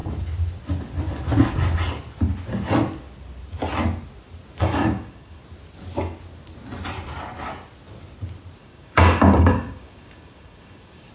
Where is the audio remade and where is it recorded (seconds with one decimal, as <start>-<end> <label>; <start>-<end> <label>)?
0.0-4.6 recorded; 4.6-5.4 remade; 5.4-8.6 recorded; 8.6-11.1 remade